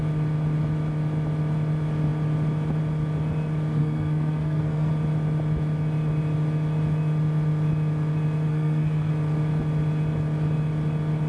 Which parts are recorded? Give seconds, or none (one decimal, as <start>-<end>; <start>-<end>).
0.0-3.8; 4.9-8.5; 9.1-11.3